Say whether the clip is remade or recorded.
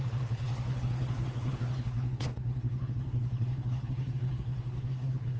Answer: remade